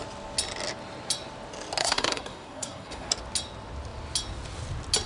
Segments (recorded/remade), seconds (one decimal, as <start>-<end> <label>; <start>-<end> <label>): 0.0-1.8 recorded; 1.8-3.1 remade; 3.1-5.1 recorded